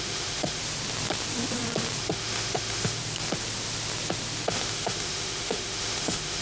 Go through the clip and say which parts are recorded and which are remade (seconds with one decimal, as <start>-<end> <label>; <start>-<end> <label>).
0.0-0.6 remade; 0.6-2.0 recorded; 2.0-3.0 remade; 3.0-4.5 recorded; 4.5-6.4 remade